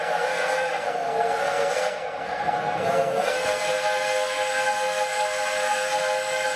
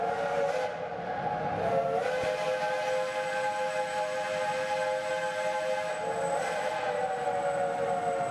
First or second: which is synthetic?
first